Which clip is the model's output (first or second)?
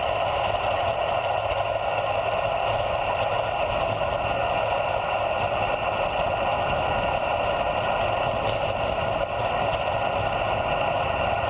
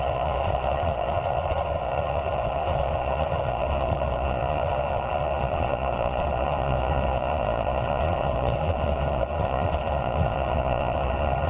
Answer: second